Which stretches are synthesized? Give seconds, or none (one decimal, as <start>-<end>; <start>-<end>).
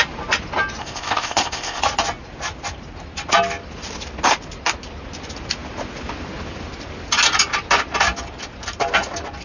0.8-1.8